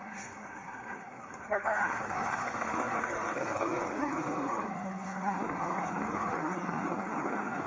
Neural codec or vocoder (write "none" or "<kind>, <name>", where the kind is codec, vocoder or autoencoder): codec, SNAC